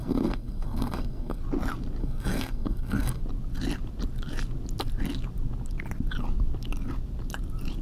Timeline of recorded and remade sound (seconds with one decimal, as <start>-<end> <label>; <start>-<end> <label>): 0.0-1.4 remade; 1.4-2.0 recorded; 2.0-3.2 remade; 3.2-7.8 recorded